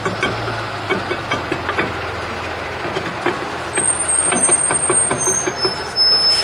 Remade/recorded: recorded